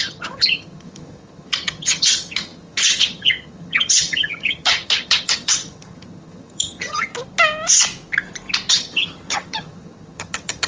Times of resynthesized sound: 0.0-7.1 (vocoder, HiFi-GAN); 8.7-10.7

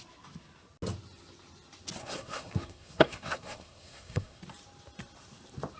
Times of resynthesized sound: 2.0-4.4 (codec, SNAC)

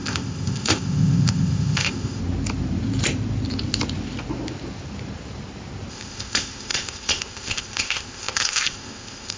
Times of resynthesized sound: 0.0-2.2 (codec, ZipCodec); 5.9-9.4

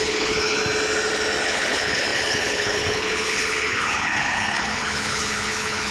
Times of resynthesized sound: 0.0-0.6 (codec, HILCodec); 1.4-5.9

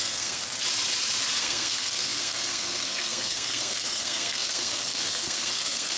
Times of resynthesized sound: 0.0-0.4 (codec, SNAC); 1.4-6.0

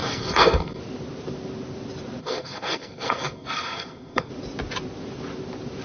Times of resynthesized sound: 0.0-0.8 (codec, SNAC); 2.2-4.3

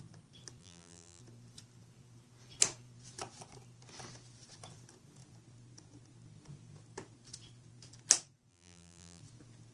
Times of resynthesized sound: 0.6-1.2 (vocoder, BigVGAN v2); 8.5-9.2

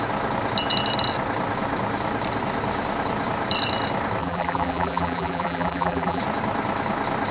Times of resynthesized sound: 4.2-6.2 (vocoder, BigVGAN v2)